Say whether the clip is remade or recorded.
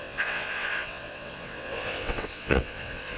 remade